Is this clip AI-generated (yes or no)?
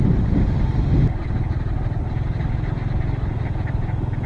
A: no